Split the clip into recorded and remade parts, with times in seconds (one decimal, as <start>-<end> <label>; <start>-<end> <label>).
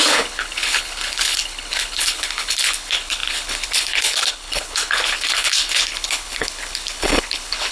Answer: 0.0-7.7 remade